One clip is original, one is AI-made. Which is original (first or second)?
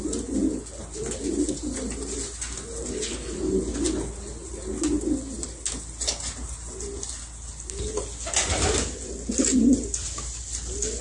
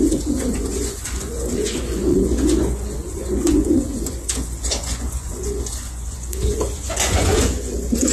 first